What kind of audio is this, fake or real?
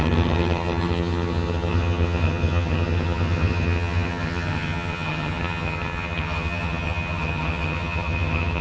fake